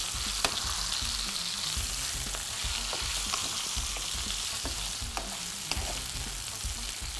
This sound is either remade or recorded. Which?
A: recorded